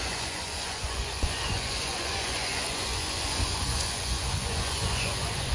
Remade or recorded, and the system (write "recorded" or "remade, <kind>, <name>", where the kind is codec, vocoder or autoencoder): remade, vocoder, Vocos